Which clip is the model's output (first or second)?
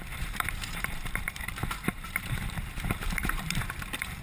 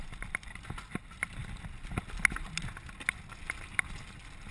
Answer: first